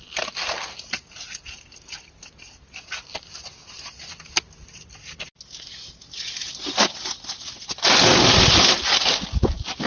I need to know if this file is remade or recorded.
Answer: recorded